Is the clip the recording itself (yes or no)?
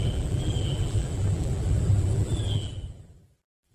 no